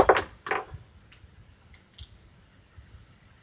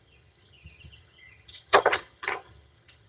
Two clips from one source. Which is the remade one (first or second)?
second